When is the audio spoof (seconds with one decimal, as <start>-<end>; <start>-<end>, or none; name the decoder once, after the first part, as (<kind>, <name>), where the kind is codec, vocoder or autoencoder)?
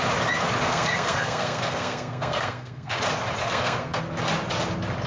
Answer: 0.6-3.0 (codec, SNAC); 3.4-4.0